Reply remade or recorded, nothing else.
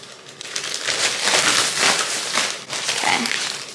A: recorded